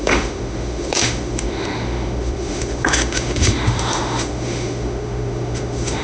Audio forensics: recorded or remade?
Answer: remade